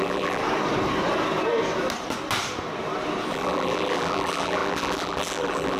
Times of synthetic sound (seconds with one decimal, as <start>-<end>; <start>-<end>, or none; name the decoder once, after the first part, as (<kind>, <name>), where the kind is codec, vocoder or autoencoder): 0.0-0.4 (vocoder, BigVGAN v2); 3.3-5.8